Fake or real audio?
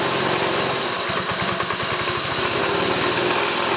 real